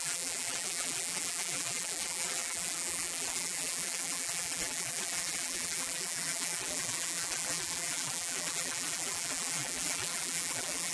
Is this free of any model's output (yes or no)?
no